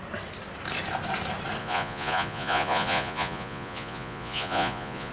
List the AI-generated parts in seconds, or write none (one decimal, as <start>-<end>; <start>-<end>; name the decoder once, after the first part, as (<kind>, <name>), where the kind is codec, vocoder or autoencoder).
1.6-5.1 (vocoder, Vocos)